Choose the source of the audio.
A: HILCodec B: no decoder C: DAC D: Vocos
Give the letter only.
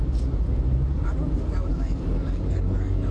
C